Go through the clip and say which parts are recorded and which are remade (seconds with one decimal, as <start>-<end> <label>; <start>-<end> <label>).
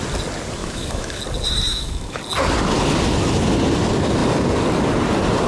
0.0-0.6 recorded; 0.6-1.2 remade; 1.2-1.7 recorded; 1.7-2.2 remade; 2.2-5.5 recorded